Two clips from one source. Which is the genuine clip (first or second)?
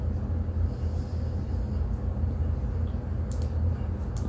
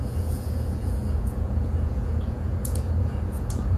first